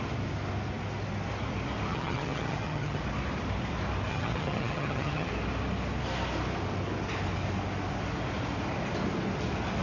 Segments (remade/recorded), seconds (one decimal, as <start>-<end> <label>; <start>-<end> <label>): 0.0-1.9 recorded; 1.9-3.0 remade; 3.0-4.1 recorded; 4.1-5.3 remade; 5.3-9.8 recorded